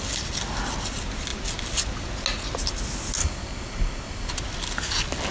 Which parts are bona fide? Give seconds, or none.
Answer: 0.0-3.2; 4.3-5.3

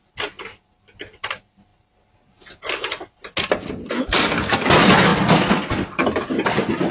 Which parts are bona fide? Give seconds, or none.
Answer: 0.0-6.9